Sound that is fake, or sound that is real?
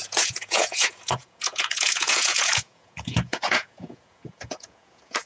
fake